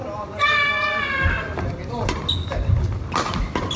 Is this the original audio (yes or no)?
yes